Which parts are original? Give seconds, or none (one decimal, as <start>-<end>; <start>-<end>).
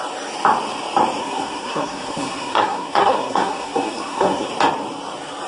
0.0-1.2; 4.5-5.5